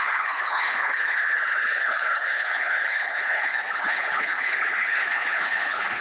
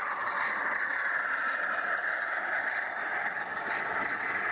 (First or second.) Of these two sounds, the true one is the second